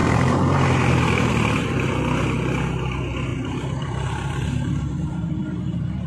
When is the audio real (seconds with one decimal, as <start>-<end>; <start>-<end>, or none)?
1.3-3.3; 5.6-6.1